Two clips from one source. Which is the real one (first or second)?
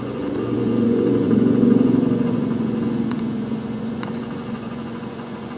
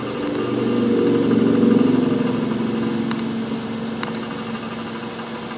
second